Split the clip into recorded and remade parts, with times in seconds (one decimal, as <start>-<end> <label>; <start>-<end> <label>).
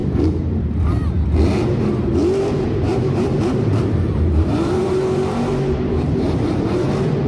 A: 0.0-1.1 remade; 1.1-2.2 recorded; 2.2-6.6 remade; 6.6-7.3 recorded